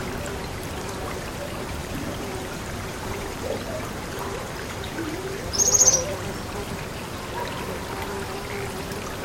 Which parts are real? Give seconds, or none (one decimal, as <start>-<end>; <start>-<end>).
0.0-1.8; 5.3-9.2